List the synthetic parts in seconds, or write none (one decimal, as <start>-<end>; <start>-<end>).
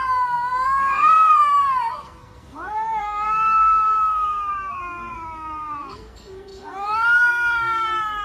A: 0.0-8.2